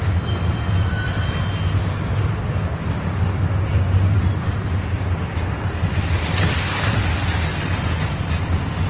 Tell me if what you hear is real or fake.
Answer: real